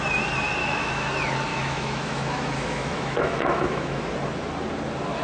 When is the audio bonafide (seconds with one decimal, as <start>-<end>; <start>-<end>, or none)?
0.0-0.6; 1.1-1.5; 4.0-5.2